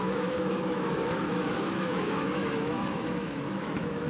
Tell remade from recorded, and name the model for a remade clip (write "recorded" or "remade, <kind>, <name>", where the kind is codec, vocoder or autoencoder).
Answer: remade, autoencoder, DAC-VAE